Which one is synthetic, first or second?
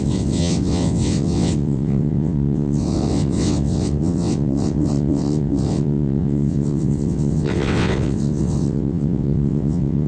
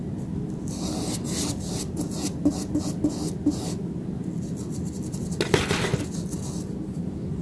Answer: first